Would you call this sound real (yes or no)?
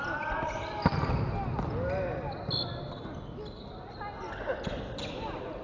yes